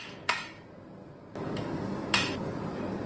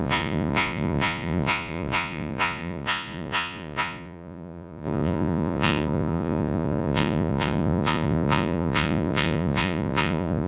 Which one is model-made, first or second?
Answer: second